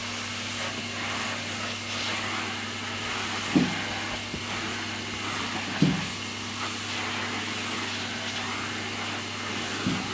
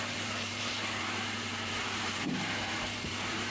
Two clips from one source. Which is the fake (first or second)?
second